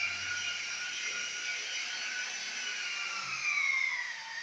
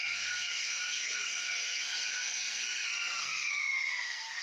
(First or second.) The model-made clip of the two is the second